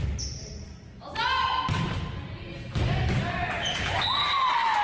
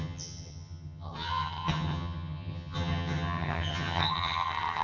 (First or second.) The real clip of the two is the first